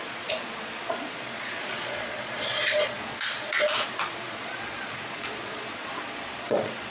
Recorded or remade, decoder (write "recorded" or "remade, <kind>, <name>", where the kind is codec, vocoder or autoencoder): remade, vocoder, Vocos